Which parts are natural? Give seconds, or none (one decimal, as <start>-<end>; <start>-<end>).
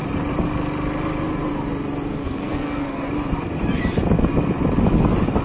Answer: 0.0-2.2; 3.1-5.4